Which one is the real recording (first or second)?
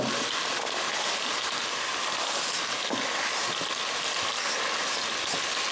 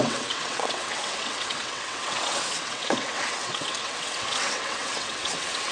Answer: first